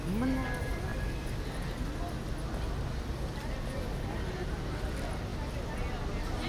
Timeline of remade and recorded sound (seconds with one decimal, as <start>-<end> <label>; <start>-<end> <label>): 0.0-6.5 recorded